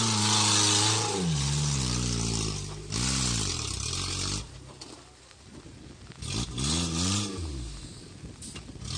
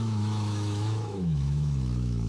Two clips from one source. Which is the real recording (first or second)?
first